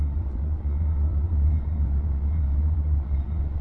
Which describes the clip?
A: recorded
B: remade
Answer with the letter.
B